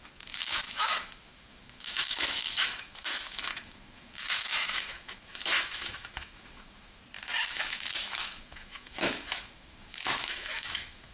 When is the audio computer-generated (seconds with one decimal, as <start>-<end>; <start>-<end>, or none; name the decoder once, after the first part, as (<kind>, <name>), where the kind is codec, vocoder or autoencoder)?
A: 0.0-7.0 (autoencoder, DAC-VAE); 7.5-11.1